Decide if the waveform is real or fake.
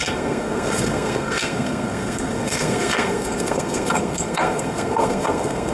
fake